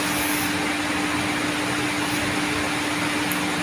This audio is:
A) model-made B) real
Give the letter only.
B